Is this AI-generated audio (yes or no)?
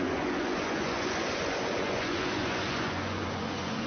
yes